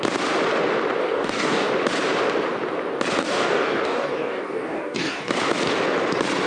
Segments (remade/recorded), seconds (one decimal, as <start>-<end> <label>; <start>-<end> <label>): 0.0-1.0 recorded; 1.0-1.7 remade; 1.7-3.2 recorded; 3.2-5.3 remade; 5.3-6.5 recorded

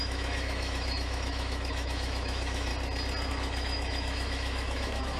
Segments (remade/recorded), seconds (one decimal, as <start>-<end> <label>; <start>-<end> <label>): 0.0-2.7 remade; 2.7-3.3 recorded; 3.3-5.2 remade

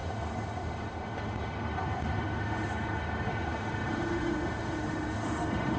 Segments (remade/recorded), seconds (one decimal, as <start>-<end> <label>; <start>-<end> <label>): 0.0-5.8 remade

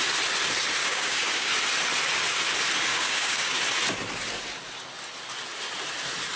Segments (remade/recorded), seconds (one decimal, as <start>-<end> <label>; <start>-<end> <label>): 0.0-0.8 recorded; 0.8-1.5 remade; 1.5-2.9 recorded; 2.9-3.6 remade; 3.6-6.4 recorded

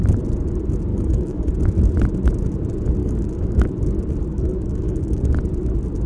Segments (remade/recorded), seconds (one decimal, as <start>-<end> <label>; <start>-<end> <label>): 0.0-0.9 recorded; 0.9-1.5 remade; 1.5-3.0 recorded; 3.0-3.7 remade; 3.7-4.3 recorded; 4.3-5.2 remade; 5.2-6.1 recorded

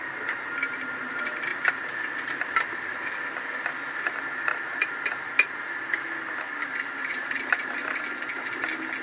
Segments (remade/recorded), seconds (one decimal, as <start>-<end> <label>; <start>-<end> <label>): 0.0-1.5 recorded; 1.5-2.1 remade; 2.1-7.0 recorded; 7.0-8.0 remade; 8.0-9.0 recorded

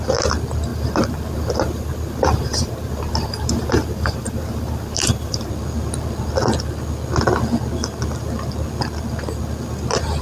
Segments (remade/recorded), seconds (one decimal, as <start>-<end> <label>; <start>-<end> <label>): 0.0-0.7 recorded; 0.7-5.5 remade; 5.5-10.2 recorded

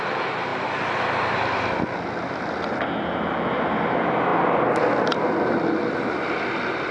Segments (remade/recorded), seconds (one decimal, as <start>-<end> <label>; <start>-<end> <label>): 0.0-6.9 recorded